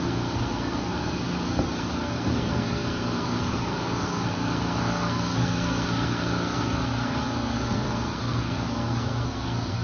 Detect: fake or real fake